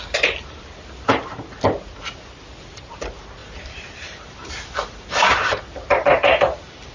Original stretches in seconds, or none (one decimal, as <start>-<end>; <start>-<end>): 0.0-3.4; 5.6-6.1